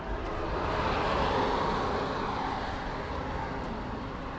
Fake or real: real